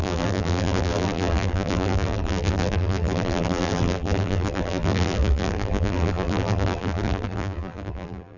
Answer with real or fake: fake